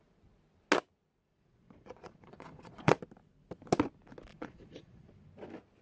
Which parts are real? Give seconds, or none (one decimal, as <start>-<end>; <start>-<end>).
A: 0.0-1.2; 3.0-4.3; 5.1-5.8